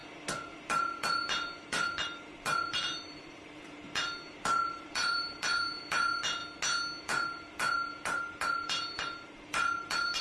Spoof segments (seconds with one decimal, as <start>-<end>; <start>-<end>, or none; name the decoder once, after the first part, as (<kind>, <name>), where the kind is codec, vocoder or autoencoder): 0.7-6.4 (vocoder, BigVGAN v2); 7.0-10.2